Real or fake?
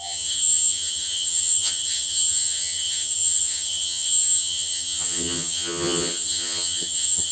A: fake